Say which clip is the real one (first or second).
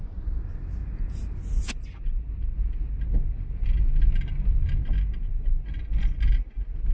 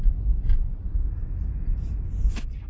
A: first